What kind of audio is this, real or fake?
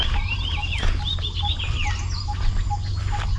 real